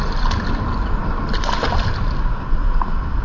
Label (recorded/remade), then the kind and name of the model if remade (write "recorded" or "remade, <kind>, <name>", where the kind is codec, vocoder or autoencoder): recorded